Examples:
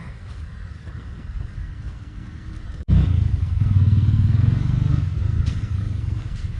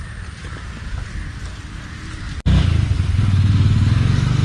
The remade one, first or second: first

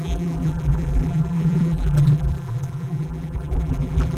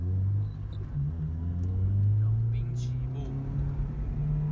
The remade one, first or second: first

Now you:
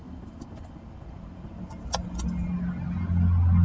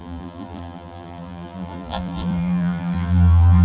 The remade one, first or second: second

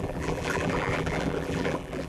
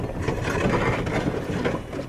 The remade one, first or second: first